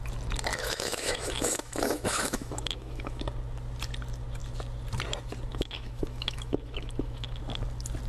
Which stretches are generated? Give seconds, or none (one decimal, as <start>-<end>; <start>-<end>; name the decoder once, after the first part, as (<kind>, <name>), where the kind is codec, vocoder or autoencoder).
0.5-3.2 (autoencoder, DAC-VAE); 5.5-7.4